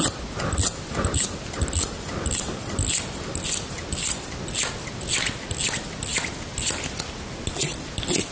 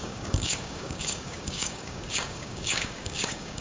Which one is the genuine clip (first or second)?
first